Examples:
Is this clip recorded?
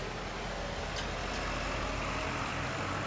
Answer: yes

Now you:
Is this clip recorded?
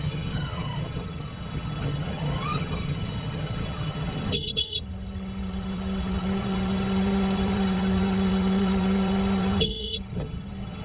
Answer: no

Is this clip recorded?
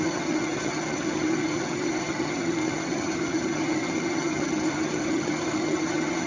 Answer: no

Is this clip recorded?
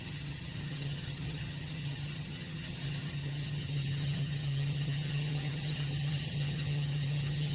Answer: no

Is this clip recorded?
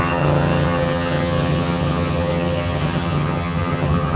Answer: no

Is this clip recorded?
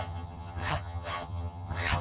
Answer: no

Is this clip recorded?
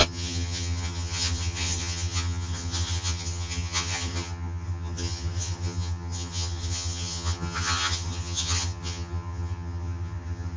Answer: no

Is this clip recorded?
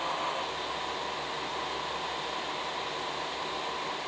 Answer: yes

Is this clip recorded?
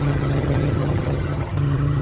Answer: no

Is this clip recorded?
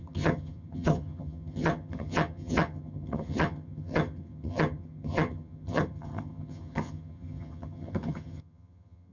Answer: no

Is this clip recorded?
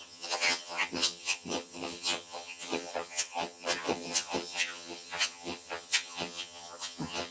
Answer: no